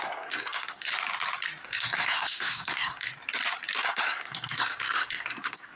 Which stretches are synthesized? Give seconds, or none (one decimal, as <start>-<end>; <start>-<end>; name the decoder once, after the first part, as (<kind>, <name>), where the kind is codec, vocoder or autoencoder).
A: 0.0-0.9 (codec, SNAC); 1.6-3.1; 3.8-5.8